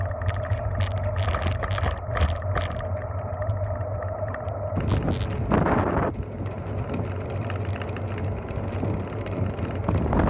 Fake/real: real